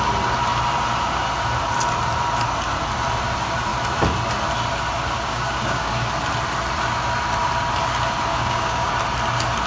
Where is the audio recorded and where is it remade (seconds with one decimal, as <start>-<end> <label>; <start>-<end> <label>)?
0.0-5.3 recorded; 5.3-6.1 remade; 6.1-8.3 recorded; 8.3-8.9 remade; 8.9-9.7 recorded